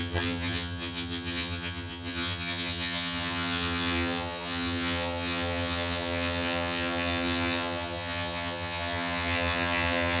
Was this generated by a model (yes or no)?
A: yes